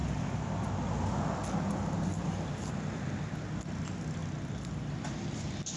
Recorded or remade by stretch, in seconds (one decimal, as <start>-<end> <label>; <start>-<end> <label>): 0.0-5.8 recorded